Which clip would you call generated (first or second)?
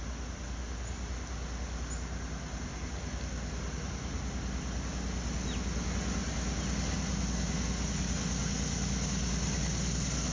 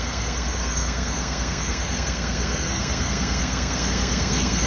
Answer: second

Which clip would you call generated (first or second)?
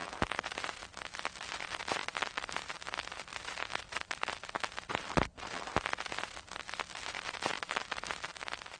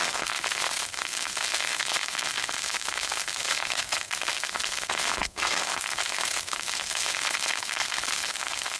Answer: second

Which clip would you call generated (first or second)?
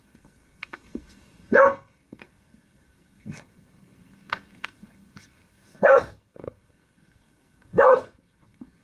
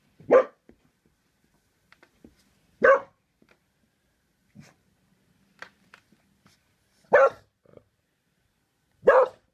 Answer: first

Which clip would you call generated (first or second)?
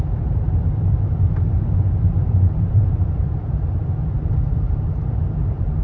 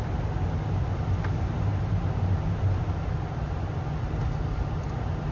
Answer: first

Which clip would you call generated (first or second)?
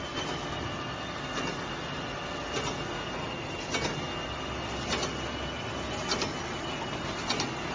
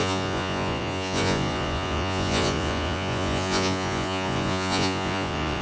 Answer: second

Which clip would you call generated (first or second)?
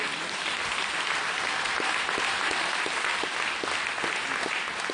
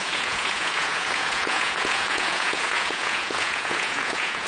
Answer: second